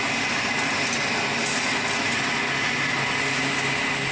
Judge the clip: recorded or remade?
recorded